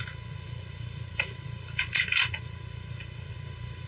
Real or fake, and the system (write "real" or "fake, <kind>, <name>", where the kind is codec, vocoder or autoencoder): real